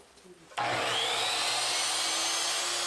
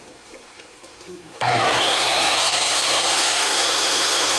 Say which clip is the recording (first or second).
first